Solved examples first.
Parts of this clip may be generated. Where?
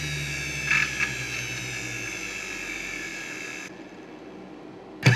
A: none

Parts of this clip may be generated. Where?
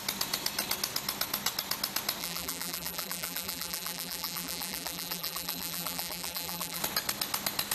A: 2.2-6.8 (vocoder, BigVGAN v2)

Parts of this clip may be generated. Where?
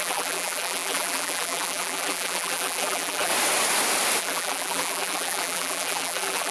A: 0.0-3.3 (vocoder, BigVGAN v2); 4.2-6.5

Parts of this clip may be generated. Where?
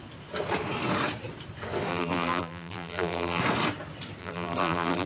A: 1.9-3.4 (vocoder, BigVGAN v2); 4.2-5.1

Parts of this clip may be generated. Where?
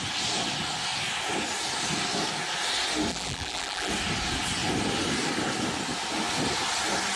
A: 3.1-3.9 (vocoder, BigVGAN v2)